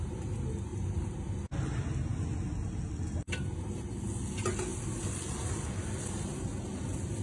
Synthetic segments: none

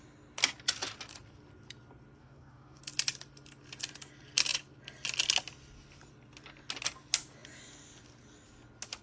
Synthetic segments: 2.2-2.8